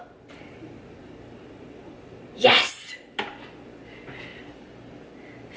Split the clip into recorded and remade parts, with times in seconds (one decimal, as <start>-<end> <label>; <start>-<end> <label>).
0.0-1.0 recorded; 1.0-3.2 remade; 3.2-4.3 recorded; 4.3-4.9 remade; 4.9-5.6 recorded

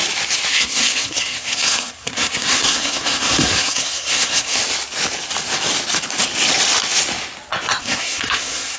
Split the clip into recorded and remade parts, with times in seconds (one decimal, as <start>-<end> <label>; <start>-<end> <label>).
0.0-0.5 recorded; 0.5-4.6 remade; 4.6-7.8 recorded; 7.8-8.8 remade